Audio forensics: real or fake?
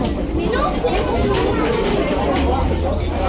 real